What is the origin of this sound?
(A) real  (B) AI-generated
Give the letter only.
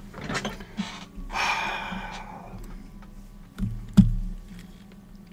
A